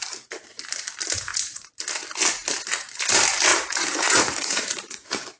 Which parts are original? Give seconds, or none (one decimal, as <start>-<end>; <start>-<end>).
0.0-3.5